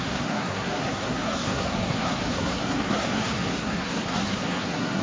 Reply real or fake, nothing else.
fake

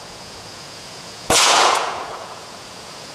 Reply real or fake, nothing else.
fake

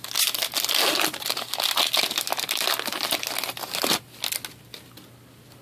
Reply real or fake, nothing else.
real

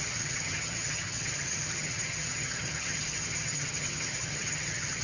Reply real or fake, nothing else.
fake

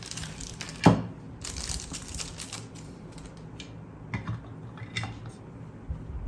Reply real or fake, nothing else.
real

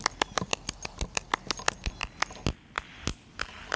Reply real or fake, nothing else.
real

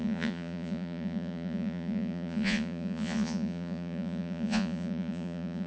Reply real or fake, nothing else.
fake